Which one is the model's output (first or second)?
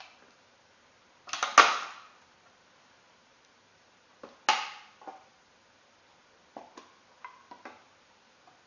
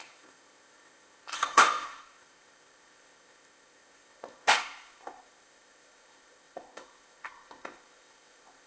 second